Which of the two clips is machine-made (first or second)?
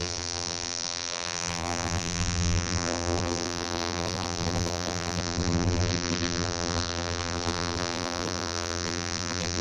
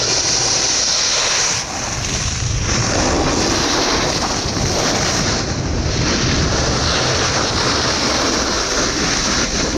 first